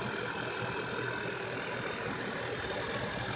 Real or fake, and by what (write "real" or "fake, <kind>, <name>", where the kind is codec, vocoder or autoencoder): real